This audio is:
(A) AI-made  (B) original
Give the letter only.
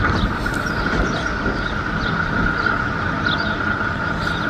B